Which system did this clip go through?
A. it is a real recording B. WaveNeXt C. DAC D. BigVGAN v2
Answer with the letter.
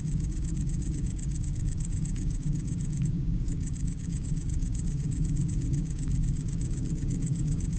C